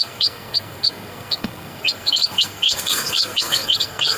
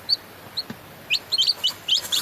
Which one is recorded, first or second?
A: second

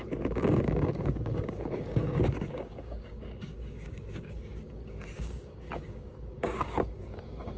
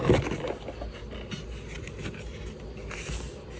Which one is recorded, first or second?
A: second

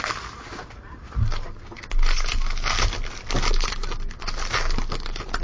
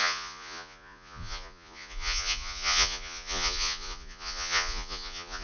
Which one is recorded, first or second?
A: first